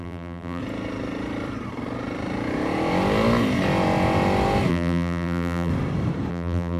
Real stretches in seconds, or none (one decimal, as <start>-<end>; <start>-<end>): 0.6-4.7; 5.7-6.3